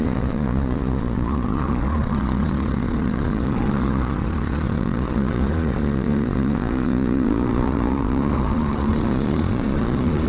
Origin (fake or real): fake